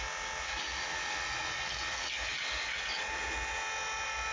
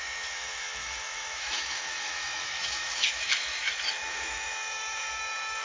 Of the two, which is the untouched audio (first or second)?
first